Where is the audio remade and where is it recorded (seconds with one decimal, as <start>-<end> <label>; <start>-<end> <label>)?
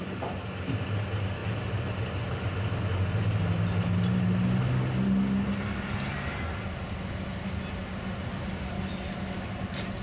0.0-10.0 recorded